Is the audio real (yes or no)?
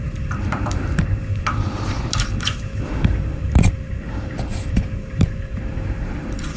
no